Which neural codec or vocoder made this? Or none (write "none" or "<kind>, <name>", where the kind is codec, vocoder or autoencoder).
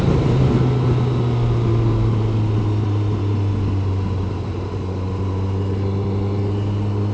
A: none